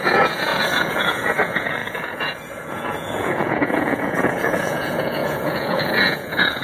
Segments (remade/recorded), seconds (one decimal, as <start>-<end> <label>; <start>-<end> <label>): 0.0-6.6 remade